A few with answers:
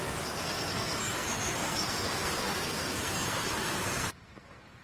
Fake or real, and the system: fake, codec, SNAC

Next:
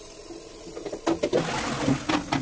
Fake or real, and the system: real